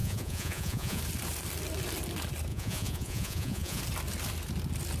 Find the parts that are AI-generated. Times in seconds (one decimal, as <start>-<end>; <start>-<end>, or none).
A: 0.0-1.0; 2.5-3.8